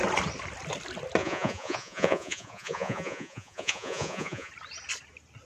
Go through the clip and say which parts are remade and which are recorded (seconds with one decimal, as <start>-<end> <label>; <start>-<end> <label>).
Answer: 0.0-1.2 recorded; 1.2-4.5 remade; 4.5-5.5 recorded